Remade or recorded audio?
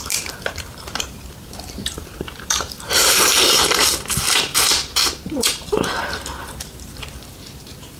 remade